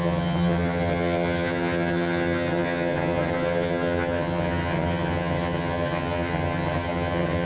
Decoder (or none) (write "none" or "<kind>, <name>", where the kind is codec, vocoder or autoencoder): vocoder, HiFi-GAN